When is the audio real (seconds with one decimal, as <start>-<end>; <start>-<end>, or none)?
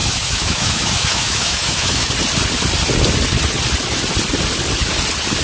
2.1-5.4